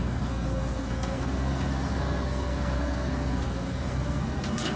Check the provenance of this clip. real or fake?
fake